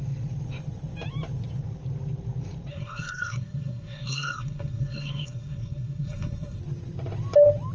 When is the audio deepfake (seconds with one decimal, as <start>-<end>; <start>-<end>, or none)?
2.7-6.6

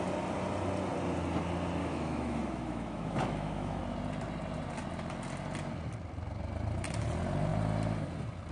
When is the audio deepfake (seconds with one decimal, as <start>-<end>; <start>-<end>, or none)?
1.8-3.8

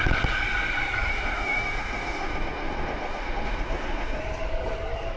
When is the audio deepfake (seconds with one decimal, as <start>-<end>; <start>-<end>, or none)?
1.1-4.2

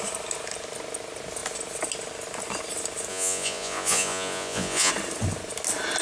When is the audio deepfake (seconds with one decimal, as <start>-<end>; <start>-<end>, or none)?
3.1-4.9

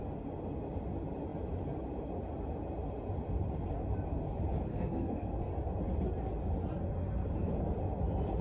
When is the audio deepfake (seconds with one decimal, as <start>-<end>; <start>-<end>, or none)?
4.7-5.5